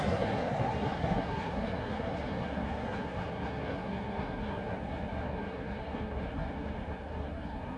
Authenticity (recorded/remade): remade